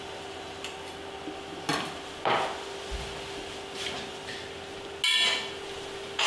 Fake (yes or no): no